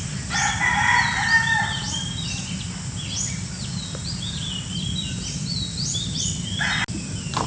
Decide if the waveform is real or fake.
real